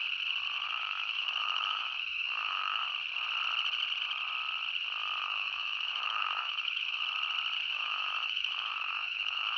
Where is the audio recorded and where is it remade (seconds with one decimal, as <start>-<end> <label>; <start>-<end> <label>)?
0.0-0.6 recorded; 0.6-2.8 remade; 2.8-5.2 recorded; 5.2-7.0 remade; 7.0-7.7 recorded; 7.7-9.6 remade